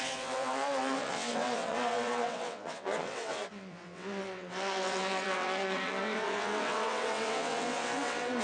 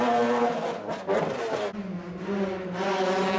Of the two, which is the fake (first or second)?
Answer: first